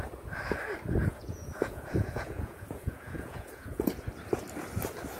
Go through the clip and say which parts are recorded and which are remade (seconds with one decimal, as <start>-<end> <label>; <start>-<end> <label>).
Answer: 0.0-1.0 recorded; 1.0-4.1 remade; 4.1-5.2 recorded

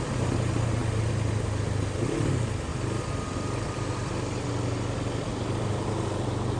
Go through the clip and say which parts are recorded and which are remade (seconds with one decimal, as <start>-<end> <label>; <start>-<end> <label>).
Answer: 0.0-2.7 recorded; 2.7-4.5 remade; 4.5-5.3 recorded; 5.3-5.9 remade; 5.9-6.6 recorded